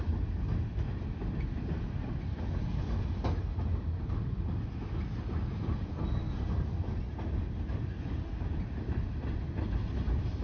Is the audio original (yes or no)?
yes